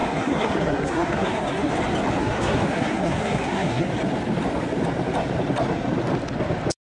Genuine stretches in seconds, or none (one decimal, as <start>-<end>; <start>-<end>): 1.7-2.2; 3.9-6.9